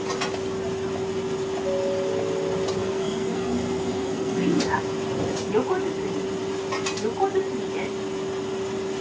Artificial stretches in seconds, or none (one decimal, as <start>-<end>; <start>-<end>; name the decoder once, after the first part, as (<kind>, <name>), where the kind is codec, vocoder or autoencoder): 2.8-4.8 (codec, SNAC)